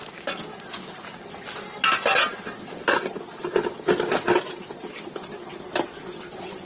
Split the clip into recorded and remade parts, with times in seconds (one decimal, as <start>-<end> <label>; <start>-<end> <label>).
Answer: 0.0-6.7 recorded